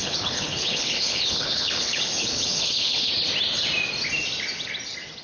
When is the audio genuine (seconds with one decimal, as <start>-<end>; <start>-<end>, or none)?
3.1-5.2

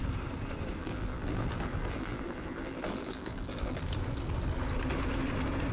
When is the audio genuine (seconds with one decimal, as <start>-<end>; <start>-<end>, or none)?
0.0-0.8; 3.8-5.7

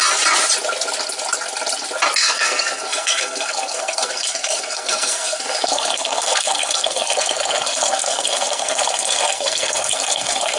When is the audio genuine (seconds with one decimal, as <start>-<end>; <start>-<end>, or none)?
0.0-2.2

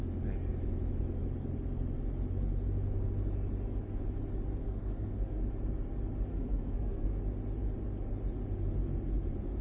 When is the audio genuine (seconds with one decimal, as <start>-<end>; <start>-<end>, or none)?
0.0-4.6; 5.4-6.3; 7.2-9.6

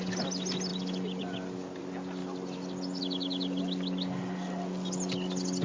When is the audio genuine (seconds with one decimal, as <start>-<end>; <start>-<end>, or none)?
0.0-5.6